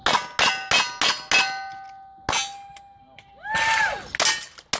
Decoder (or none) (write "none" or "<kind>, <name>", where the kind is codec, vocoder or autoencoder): none